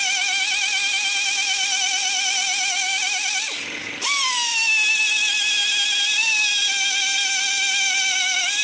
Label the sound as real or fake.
real